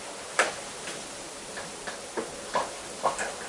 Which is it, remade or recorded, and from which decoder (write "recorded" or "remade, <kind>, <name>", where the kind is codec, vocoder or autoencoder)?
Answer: recorded